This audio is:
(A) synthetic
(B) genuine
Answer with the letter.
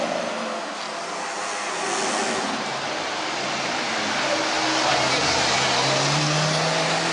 B